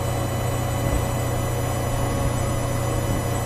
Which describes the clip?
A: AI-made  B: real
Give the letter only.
B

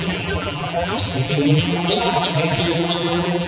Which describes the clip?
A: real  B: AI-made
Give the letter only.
B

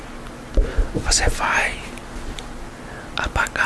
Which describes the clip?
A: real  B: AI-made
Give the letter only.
A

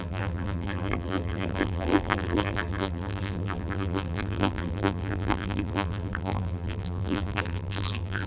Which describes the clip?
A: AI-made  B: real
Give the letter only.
A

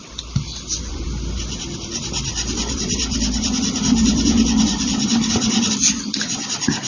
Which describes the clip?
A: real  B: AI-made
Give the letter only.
B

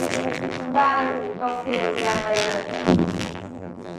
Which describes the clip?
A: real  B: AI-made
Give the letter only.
B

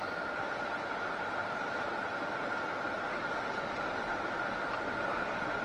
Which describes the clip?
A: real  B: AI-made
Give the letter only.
A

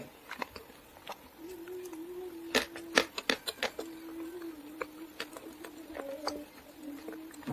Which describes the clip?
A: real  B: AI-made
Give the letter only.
A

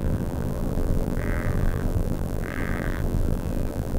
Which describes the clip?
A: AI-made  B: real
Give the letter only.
A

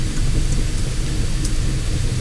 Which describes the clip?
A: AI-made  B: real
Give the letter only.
B